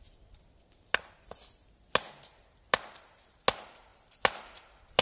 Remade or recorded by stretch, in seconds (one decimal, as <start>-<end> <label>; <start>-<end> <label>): 0.0-5.0 recorded